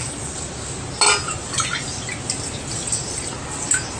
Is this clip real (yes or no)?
yes